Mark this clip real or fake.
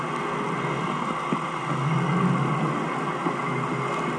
real